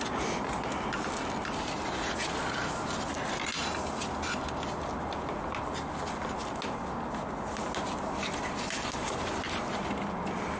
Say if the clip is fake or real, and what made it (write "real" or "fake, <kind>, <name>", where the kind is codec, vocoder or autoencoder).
real